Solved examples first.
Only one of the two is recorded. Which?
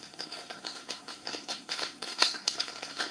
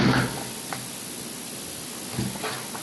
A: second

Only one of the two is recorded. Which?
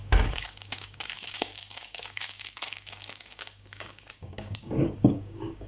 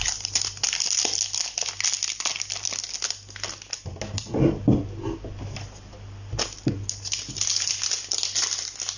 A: second